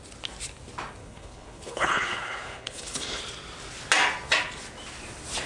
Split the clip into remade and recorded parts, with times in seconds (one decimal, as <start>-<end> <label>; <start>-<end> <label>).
0.0-1.0 recorded; 1.0-3.2 remade; 3.2-5.5 recorded